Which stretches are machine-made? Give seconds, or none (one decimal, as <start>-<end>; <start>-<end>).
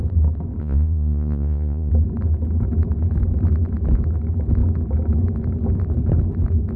0.6-1.9